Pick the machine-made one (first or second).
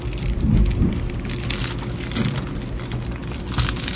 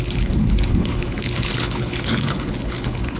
second